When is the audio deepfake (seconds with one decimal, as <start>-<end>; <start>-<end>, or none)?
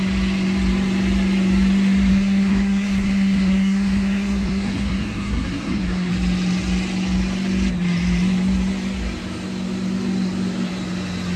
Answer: 2.1-6.1